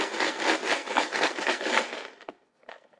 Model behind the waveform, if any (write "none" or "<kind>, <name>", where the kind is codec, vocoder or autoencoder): codec, SNAC